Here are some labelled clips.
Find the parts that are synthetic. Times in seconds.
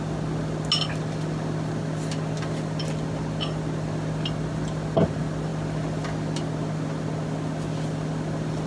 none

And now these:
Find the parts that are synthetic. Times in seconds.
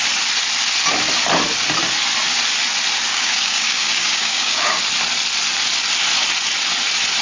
3.1-4.8 (codec, DAC)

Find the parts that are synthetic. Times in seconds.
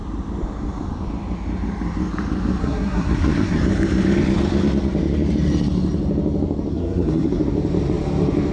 2.6-3.6 (codec, SNAC); 6.7-7.4